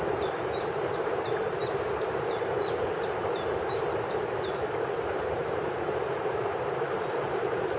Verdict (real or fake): fake